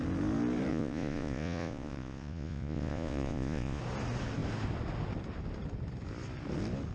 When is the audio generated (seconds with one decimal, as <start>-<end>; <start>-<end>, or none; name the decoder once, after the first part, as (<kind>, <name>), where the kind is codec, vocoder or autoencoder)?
0.7-3.8 (vocoder, Vocos)